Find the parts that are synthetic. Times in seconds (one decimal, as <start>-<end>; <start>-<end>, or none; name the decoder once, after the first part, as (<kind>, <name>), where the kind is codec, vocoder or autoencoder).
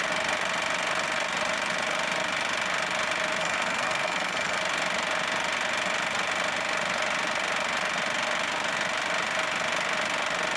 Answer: 3.4-4.6 (codec, SNAC)